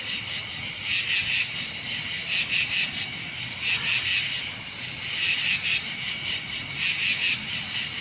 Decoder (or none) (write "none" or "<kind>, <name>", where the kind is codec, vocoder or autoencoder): none